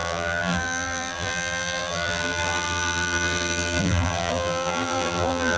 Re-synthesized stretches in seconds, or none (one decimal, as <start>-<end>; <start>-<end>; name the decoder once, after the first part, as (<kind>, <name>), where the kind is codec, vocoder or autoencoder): 0.0-5.6 (vocoder, BigVGAN v2)